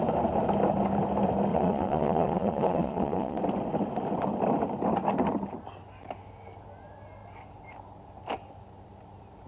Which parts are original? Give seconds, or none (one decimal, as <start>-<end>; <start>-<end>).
0.0-1.5; 3.4-9.5